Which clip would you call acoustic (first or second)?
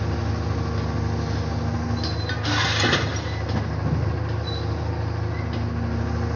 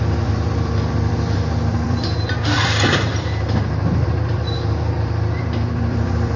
first